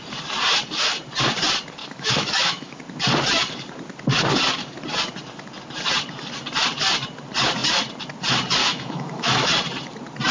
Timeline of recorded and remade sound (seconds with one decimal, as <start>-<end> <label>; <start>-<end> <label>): 0.0-1.8 recorded; 1.8-2.8 remade; 2.8-8.6 recorded; 8.6-9.5 remade; 9.5-10.3 recorded